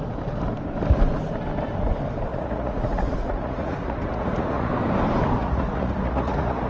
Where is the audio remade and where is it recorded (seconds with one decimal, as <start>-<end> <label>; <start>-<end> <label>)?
0.0-2.3 recorded; 2.3-4.7 remade; 4.7-5.4 recorded; 5.4-6.7 remade